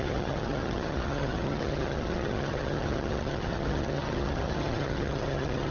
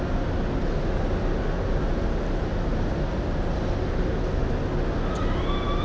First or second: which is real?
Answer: second